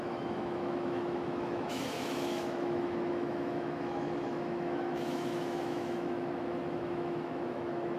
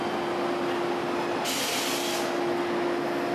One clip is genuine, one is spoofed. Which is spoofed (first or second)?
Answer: first